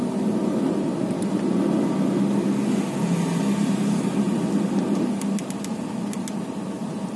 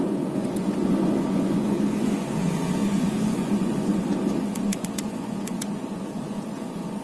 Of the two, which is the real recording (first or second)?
first